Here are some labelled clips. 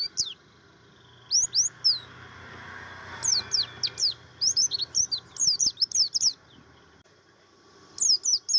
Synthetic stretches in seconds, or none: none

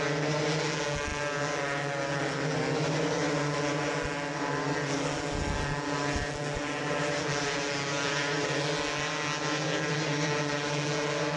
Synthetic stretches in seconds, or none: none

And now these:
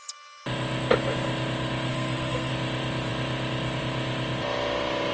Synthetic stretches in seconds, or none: 1.9-2.5 (codec, SNAC)